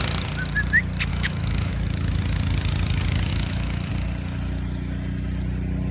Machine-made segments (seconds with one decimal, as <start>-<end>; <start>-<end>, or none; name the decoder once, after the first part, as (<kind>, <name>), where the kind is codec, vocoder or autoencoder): 1.1-1.7 (autoencoder, DAC-VAE); 3.3-3.9